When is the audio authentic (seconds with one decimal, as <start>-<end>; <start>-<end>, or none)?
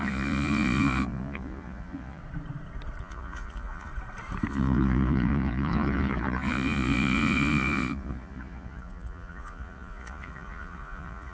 2.2-3.0; 3.9-4.5